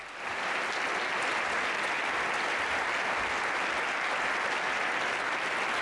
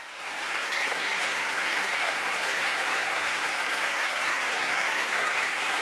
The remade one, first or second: second